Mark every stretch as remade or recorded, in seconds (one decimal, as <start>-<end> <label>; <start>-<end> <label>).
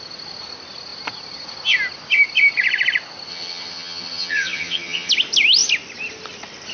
0.0-3.3 recorded; 3.3-5.1 remade; 5.1-6.7 recorded